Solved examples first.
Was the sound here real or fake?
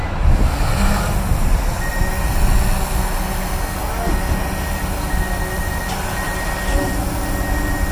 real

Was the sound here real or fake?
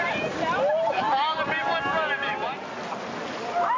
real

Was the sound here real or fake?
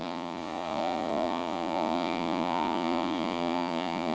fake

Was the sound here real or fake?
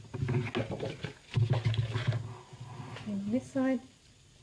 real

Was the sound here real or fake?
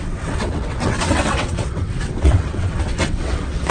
fake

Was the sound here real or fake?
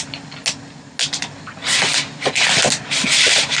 real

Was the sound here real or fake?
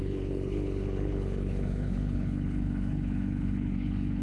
fake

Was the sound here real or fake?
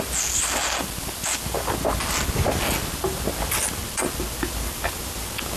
real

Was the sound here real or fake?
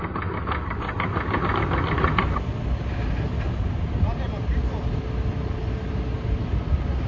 real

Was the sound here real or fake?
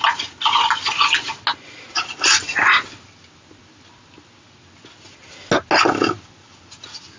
real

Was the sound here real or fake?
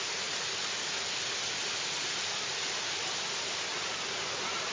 real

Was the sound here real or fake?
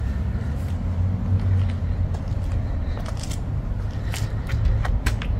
real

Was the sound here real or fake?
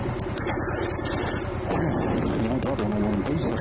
real